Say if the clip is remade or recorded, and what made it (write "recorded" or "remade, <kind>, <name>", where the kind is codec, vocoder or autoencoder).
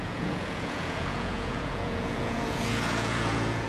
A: remade, vocoder, Vocos